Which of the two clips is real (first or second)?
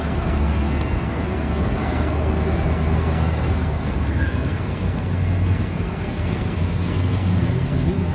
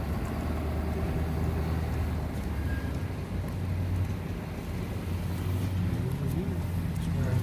second